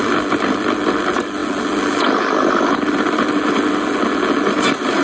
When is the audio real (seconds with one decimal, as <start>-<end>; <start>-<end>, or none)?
0.0-5.0